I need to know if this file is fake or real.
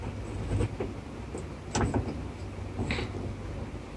real